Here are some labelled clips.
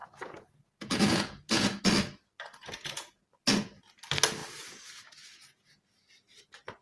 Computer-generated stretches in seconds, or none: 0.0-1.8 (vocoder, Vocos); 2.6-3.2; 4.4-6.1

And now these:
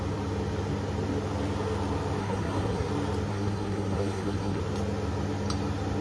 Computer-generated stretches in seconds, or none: 2.2-2.9 (codec, SNAC); 3.3-4.6

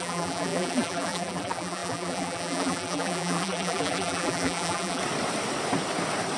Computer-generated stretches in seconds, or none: 0.0-5.0 (vocoder, BigVGAN v2)

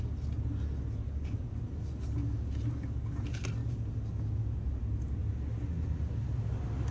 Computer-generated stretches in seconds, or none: none

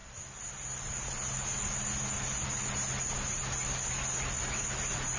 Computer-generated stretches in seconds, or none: none

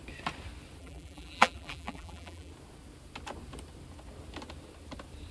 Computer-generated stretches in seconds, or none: 0.8-2.5 (vocoder, BigVGAN v2)